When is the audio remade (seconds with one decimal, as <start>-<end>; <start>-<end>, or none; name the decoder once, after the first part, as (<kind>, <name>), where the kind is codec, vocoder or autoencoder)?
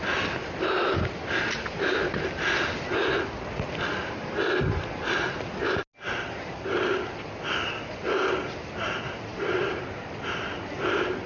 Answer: none